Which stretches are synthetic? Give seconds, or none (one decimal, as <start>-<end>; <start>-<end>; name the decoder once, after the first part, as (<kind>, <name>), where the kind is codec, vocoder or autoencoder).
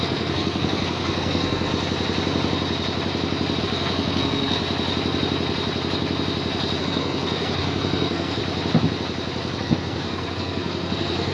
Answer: 0.0-1.7 (codec, SNAC); 3.6-4.6; 6.8-8.4; 9.6-11.3